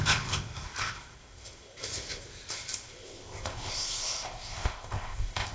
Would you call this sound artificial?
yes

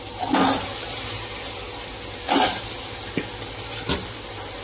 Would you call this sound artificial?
no